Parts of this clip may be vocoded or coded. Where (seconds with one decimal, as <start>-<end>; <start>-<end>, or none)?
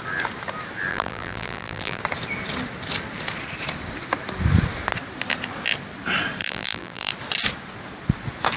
0.9-2.0; 6.4-7.1